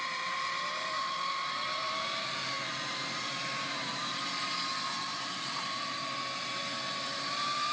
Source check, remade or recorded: remade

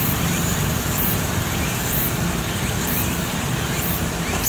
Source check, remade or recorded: remade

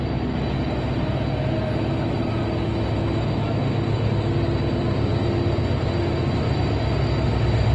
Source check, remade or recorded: recorded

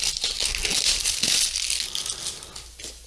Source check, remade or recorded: recorded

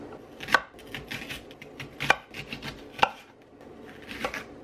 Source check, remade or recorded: recorded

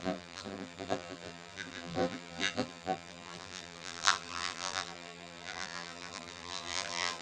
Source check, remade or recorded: remade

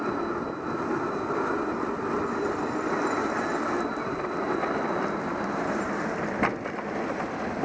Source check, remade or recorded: recorded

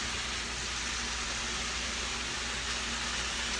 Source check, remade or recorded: recorded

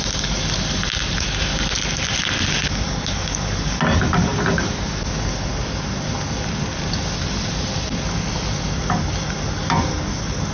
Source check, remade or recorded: recorded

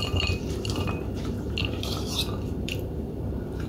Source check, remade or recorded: remade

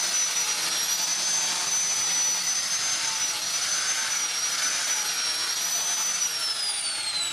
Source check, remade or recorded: recorded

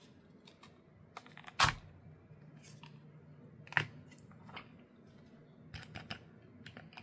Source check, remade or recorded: recorded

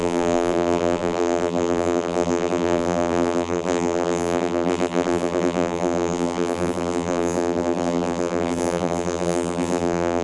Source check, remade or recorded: remade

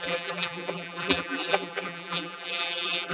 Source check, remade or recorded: remade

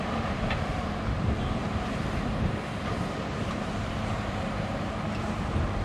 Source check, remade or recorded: remade